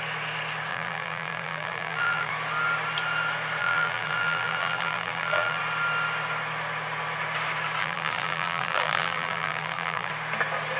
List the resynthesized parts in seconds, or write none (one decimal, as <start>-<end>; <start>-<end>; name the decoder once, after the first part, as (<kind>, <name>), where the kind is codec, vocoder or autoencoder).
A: 0.7-2.3 (vocoder, BigVGAN v2); 3.6-5.6; 7.8-10.1